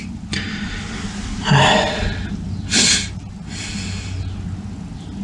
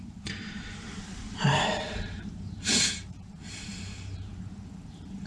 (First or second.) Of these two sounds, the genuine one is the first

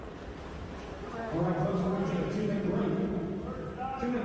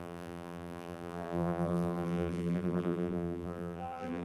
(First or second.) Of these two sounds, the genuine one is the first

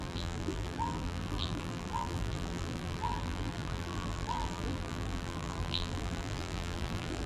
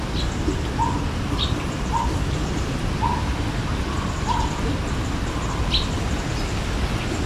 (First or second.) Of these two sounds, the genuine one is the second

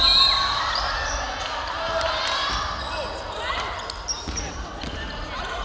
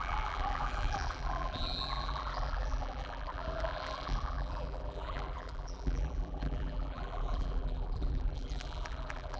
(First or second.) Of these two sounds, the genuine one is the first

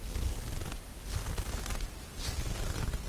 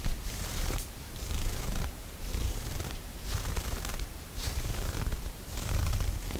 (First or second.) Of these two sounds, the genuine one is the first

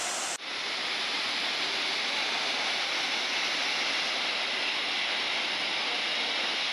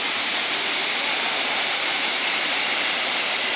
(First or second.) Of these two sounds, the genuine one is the first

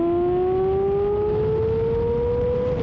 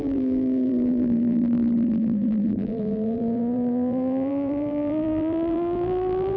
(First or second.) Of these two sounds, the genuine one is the first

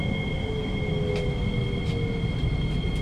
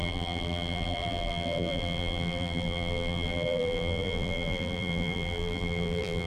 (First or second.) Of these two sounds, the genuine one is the first